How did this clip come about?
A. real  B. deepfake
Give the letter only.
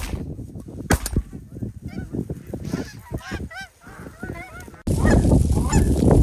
A